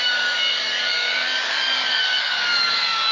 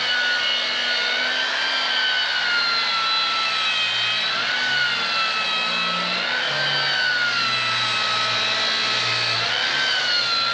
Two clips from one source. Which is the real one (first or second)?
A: second